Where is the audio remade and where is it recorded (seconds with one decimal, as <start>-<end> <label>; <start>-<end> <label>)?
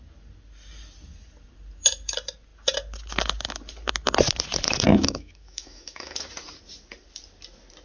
0.0-4.9 recorded; 4.9-6.3 remade; 6.3-7.8 recorded